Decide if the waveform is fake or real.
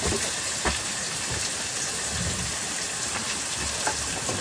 real